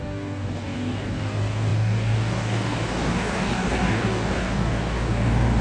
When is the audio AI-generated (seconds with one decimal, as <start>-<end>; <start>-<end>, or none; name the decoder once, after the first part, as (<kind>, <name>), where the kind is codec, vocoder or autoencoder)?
0.0-5.6 (codec, DAC)